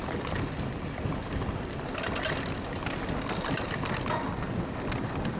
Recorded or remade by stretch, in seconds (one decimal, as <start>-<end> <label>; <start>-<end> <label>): 0.0-5.4 recorded